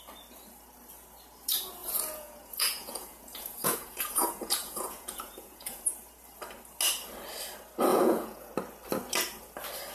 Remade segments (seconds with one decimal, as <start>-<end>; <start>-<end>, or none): 1.8-5.9; 7.9-8.5